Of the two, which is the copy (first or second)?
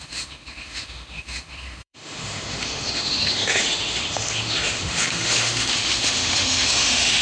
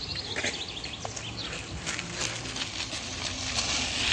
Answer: first